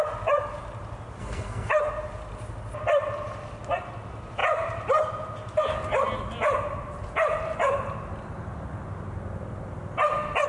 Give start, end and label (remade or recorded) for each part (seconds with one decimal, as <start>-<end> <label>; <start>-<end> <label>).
0.0-1.2 recorded; 1.2-1.7 remade; 1.7-10.5 recorded